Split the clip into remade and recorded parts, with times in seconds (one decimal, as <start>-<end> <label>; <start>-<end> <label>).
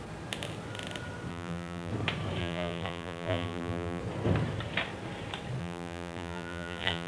0.0-1.3 recorded; 1.3-1.9 remade; 1.9-2.4 recorded; 2.4-4.0 remade; 4.0-5.6 recorded; 5.6-7.1 remade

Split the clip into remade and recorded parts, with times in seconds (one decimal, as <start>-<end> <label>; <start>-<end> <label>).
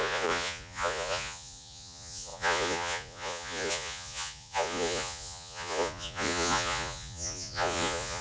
0.0-8.2 remade